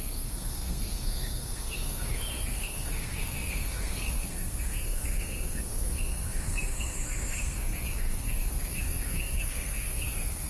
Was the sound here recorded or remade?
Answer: remade